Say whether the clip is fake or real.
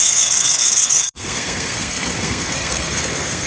fake